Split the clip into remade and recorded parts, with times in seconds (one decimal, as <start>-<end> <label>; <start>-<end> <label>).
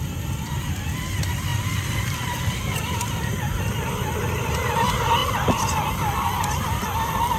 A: 0.0-5.2 remade; 5.2-5.9 recorded; 5.9-7.4 remade